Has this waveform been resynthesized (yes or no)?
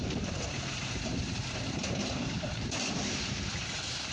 yes